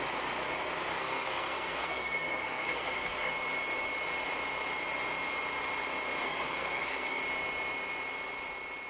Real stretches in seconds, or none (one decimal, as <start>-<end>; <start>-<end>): 0.0-0.9; 3.3-6.2; 7.2-8.9

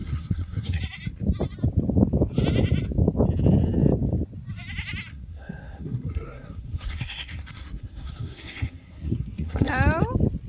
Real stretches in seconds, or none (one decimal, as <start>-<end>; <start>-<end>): 0.8-5.1; 9.7-10.5

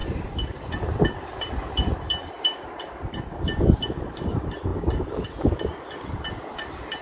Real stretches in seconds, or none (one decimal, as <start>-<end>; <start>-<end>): 4.7-5.8